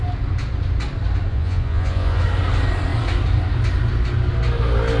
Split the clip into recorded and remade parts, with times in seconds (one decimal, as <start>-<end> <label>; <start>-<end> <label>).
0.0-1.3 recorded; 1.3-2.2 remade; 2.2-5.0 recorded